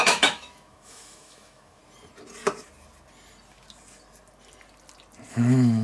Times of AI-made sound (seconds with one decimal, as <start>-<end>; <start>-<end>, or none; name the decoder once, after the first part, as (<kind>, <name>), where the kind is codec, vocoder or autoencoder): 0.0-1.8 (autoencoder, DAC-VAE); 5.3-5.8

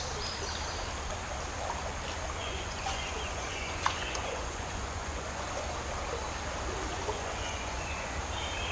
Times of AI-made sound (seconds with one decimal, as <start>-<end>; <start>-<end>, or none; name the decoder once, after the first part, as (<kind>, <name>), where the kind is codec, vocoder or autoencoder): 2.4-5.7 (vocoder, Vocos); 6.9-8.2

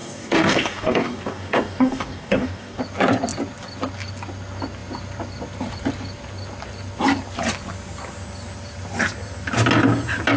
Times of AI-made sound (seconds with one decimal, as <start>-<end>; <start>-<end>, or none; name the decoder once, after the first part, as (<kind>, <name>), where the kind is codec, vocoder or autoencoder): 0.0-2.8 (codec, DAC)

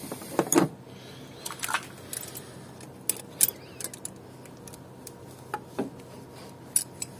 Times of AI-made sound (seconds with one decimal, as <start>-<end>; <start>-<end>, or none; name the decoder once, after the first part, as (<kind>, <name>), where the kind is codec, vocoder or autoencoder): none

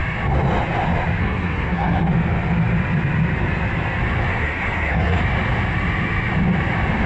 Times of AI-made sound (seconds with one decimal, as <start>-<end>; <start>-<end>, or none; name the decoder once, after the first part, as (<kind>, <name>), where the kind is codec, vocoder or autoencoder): 1.2-2.1 (codec, SNAC); 4.3-5.2

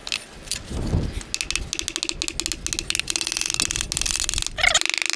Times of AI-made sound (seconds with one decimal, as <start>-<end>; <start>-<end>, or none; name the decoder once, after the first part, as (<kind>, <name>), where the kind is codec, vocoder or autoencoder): none

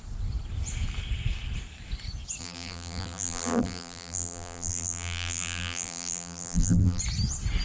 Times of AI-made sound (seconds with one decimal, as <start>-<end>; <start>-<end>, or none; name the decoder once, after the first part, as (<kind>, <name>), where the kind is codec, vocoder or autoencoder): 2.4-7.0 (vocoder, BigVGAN v2)

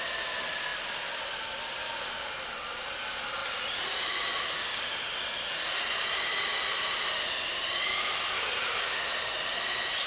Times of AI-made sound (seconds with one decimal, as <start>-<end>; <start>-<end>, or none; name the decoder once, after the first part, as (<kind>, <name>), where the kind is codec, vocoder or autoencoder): none